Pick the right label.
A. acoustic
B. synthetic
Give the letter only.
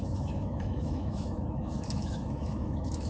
B